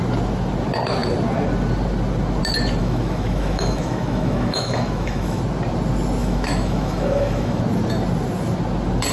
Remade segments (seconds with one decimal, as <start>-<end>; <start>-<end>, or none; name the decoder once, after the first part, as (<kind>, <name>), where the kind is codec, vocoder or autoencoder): 2.8-5.4 (autoencoder, DAC-VAE); 6.2-7.6